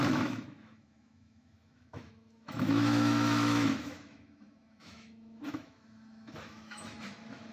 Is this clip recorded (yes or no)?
no